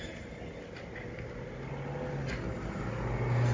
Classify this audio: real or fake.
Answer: real